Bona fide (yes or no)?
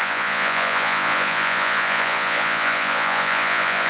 no